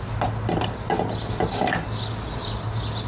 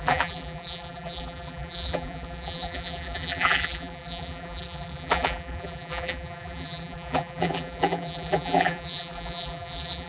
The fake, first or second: second